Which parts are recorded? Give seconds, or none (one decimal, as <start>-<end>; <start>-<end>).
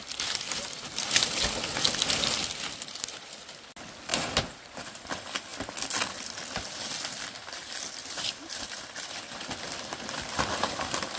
0.0-4.1; 5.0-11.2